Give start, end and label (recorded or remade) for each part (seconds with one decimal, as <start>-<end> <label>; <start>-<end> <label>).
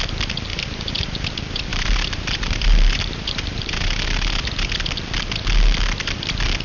0.0-0.5 recorded; 0.5-1.1 remade; 1.1-1.7 recorded; 1.7-4.7 remade; 4.7-6.6 recorded